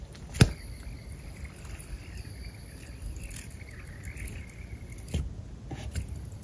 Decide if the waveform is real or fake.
real